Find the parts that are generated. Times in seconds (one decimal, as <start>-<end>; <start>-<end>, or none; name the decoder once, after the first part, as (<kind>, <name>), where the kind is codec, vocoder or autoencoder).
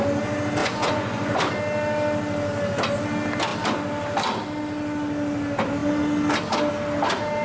0.6-1.4 (vocoder, Vocos)